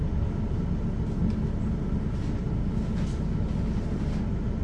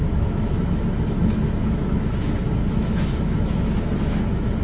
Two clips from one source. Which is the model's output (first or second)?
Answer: second